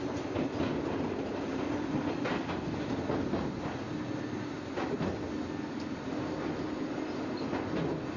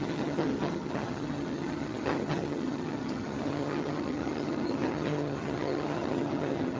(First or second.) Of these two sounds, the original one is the first